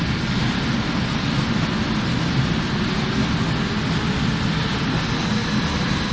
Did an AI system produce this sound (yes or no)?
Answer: no